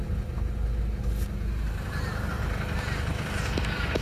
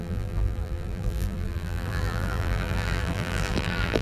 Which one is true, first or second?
first